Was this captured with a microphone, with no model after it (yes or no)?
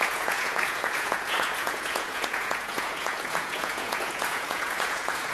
no